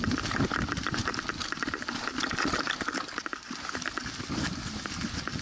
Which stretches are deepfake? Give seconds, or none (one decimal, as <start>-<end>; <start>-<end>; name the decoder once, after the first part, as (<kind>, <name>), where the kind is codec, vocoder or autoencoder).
none